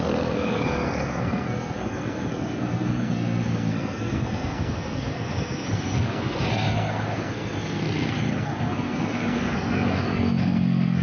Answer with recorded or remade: remade